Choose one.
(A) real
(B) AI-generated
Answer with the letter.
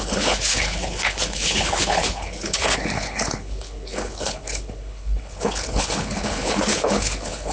B